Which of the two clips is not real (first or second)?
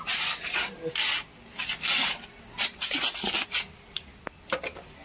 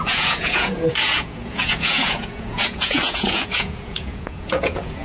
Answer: second